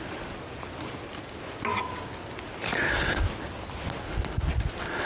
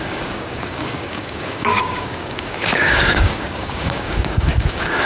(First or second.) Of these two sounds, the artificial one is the second